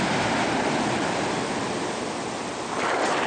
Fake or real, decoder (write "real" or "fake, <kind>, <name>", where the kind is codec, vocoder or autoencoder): real